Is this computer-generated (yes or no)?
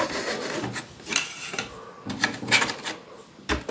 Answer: no